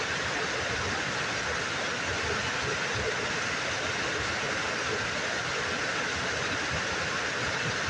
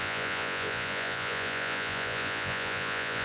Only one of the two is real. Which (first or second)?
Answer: first